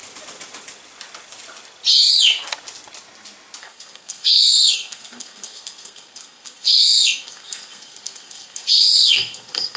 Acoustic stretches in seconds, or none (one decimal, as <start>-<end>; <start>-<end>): 0.0-3.6